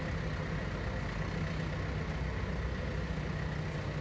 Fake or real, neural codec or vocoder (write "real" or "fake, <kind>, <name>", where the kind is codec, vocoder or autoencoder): real